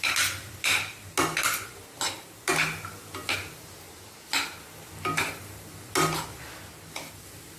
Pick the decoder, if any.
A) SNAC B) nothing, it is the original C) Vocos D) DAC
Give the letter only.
B